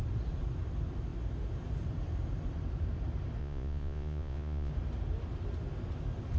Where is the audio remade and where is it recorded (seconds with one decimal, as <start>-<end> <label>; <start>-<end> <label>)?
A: 0.0-3.4 recorded; 3.4-4.7 remade; 4.7-6.4 recorded